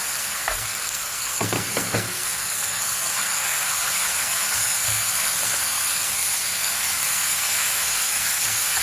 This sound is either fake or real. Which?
fake